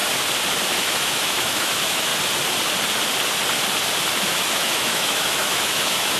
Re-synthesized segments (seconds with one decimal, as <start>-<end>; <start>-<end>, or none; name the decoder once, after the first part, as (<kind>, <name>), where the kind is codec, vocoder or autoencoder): 0.7-2.1 (autoencoder, DAC-VAE); 4.3-6.2

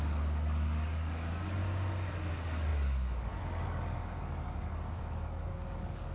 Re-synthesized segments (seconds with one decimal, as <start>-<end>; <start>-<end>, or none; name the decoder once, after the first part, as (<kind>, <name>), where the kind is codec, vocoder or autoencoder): 0.0-1.6 (codec, DAC); 2.3-6.1

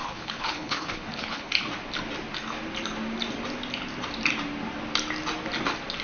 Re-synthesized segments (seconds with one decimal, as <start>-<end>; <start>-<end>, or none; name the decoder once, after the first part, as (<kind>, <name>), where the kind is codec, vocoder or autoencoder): 0.0-1.5 (codec, HILCodec)

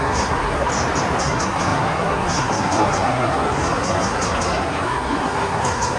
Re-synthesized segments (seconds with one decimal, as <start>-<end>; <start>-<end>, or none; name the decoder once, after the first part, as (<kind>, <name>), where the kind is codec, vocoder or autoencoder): 0.0-0.7 (codec, SNAC); 1.2-6.0

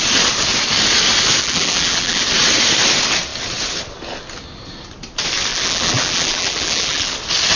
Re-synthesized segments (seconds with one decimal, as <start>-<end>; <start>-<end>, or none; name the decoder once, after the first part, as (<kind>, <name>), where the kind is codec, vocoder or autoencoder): 1.4-2.2 (vocoder, BigVGAN v2); 5.5-7.1

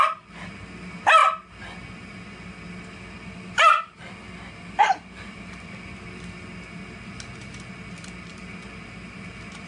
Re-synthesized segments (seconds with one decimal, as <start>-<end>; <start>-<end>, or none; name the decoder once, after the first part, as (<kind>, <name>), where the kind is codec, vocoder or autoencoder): none